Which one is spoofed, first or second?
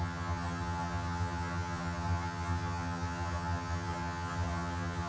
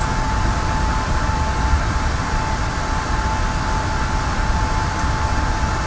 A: first